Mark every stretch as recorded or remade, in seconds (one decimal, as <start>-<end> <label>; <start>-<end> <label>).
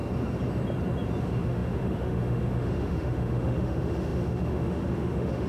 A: 0.0-1.2 recorded; 1.2-5.5 remade